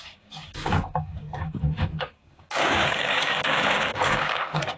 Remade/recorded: remade